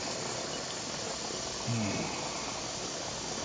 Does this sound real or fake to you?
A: real